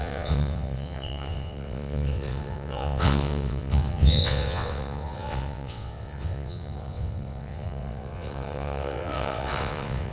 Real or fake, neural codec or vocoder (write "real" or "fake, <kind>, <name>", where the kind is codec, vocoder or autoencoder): fake, vocoder, WaveNeXt